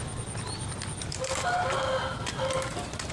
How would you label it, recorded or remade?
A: recorded